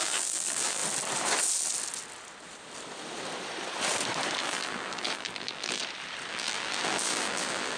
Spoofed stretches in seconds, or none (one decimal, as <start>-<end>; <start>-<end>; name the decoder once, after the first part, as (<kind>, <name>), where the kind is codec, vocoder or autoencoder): 0.0-0.8 (vocoder, BigVGAN v2); 4.4-5.8; 6.3-7.8